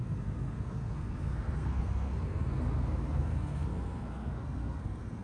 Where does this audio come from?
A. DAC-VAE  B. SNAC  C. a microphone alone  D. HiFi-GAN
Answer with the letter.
B